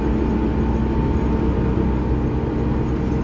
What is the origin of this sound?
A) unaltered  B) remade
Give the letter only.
A